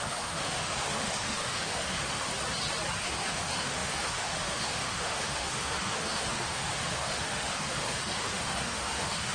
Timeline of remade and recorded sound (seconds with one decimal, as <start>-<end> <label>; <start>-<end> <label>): 0.0-2.3 remade; 2.3-3.0 recorded; 3.0-9.3 remade